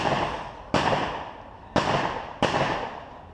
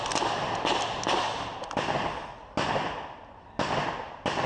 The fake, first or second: first